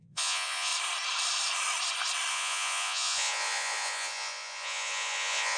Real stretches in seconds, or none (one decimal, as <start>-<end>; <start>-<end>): 0.7-2.3